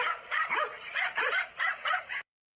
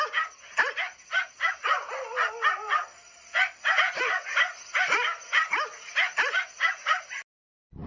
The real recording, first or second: second